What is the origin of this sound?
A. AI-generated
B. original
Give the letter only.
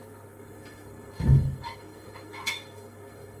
A